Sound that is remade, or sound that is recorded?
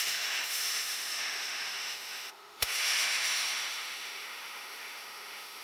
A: remade